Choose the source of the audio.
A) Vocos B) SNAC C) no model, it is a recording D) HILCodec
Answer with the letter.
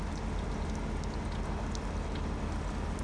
C